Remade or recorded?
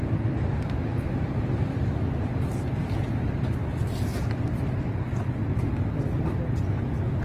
recorded